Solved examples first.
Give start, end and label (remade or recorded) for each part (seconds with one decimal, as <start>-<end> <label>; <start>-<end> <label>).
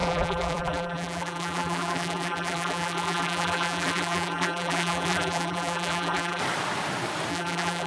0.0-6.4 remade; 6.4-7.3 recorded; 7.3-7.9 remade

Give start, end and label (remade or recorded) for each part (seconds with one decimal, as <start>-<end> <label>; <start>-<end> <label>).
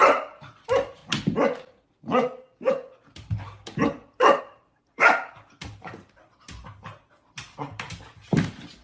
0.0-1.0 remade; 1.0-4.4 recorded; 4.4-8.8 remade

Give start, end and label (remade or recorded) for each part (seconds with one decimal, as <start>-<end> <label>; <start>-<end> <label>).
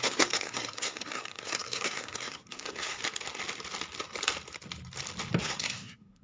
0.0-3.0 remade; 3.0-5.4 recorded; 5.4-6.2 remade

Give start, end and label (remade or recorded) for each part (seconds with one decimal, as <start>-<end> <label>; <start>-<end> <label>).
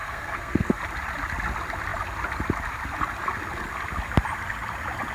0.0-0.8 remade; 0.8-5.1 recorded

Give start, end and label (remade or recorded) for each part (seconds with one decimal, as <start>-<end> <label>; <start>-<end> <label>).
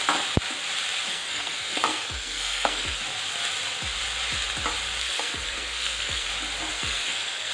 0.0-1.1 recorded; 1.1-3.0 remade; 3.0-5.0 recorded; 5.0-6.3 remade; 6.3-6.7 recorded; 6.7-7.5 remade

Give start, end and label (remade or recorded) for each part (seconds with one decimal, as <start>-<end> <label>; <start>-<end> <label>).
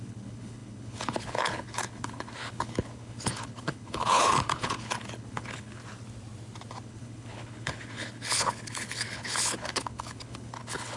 0.0-5.8 remade; 5.8-6.8 recorded; 6.8-11.0 remade